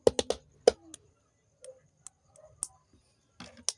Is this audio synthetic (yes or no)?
no